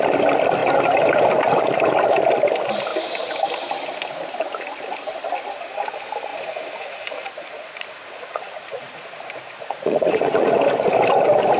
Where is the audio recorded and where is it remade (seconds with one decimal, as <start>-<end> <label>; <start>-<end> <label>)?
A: 0.0-6.3 recorded; 6.3-10.5 remade; 10.5-11.6 recorded